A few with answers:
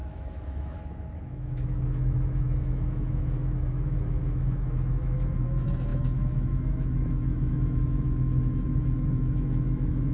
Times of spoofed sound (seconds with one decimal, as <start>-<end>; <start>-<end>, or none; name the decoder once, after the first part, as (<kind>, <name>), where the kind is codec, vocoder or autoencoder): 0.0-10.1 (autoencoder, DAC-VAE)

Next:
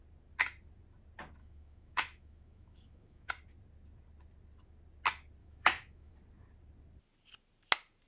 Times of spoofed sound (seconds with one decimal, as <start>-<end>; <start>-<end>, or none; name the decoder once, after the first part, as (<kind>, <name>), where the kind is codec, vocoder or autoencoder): 1.4-3.3 (autoencoder, DAC-VAE); 5.4-6.1

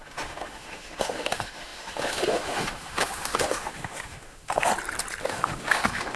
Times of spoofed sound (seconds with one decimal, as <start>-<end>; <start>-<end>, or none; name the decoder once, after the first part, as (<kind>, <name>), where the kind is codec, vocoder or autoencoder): 0.0-4.7 (autoencoder, DAC-VAE); 5.2-6.2

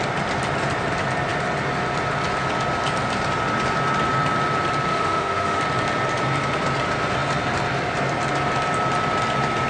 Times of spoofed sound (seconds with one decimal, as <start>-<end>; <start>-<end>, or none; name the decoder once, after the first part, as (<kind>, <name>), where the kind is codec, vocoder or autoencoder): 4.9-5.6 (autoencoder, DAC-VAE)

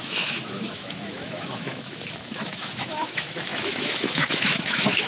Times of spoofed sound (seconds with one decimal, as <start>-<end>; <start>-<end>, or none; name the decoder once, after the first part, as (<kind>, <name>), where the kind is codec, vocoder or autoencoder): 0.0-5.1 (autoencoder, DAC-VAE)